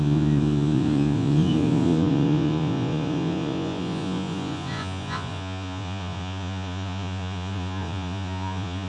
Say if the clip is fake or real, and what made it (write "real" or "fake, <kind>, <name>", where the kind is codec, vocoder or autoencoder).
fake, vocoder, Vocos